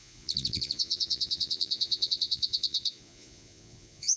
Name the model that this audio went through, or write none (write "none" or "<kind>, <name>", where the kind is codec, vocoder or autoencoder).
vocoder, Vocos